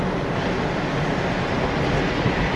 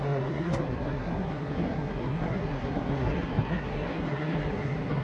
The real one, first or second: first